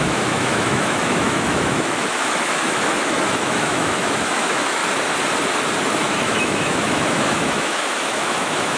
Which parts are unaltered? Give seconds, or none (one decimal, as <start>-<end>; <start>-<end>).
4.8-6.0